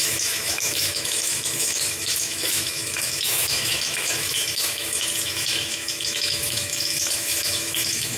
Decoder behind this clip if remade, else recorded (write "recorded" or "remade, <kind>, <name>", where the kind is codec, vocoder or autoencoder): remade, autoencoder, DAC-VAE